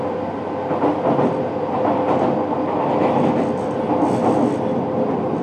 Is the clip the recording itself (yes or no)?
yes